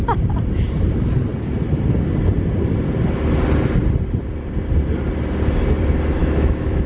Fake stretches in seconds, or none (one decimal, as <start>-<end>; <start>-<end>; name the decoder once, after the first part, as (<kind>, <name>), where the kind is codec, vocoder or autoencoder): 6.2-6.9 (autoencoder, DAC-VAE)